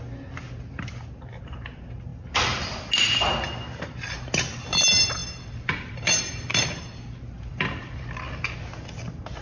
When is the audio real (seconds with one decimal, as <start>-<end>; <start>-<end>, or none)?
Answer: 0.0-2.1; 2.8-5.2; 5.9-7.5; 8.3-9.4